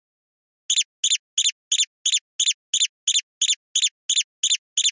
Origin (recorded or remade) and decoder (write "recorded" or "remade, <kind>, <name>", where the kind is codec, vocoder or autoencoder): recorded